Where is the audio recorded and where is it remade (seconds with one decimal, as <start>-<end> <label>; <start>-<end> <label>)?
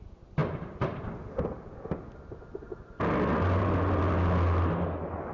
0.0-5.3 recorded